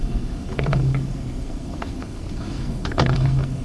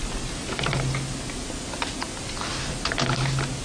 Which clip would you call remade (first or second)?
first